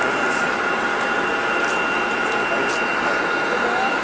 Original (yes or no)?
yes